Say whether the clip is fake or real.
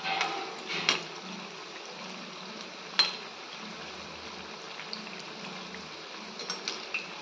real